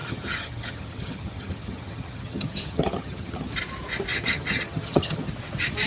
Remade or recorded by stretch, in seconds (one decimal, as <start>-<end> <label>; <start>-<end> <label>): 0.0-3.5 remade; 3.5-4.1 recorded; 4.1-5.3 remade; 5.3-5.9 recorded